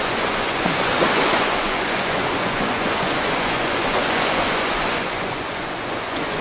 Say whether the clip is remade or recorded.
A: remade